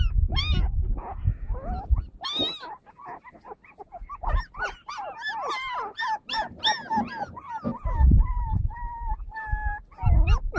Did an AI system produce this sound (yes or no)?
no